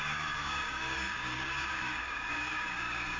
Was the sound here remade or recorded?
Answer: remade